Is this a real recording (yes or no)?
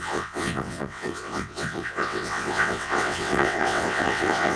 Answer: no